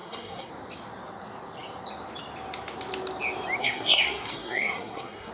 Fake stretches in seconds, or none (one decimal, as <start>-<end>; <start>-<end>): 0.0-0.5; 3.6-5.3